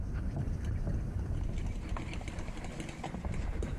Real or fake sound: real